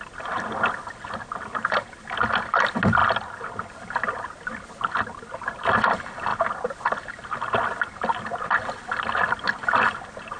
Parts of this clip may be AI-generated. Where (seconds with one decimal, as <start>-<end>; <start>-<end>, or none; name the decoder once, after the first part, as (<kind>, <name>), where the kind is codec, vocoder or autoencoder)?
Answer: none